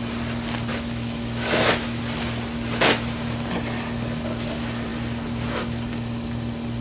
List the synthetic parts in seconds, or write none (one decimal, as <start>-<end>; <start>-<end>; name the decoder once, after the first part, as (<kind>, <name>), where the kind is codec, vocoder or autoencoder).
0.7-2.0 (autoencoder, DAC-VAE)